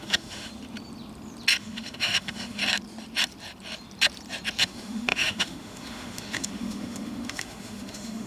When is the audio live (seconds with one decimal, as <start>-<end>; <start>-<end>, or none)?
0.5-1.6; 2.6-4.6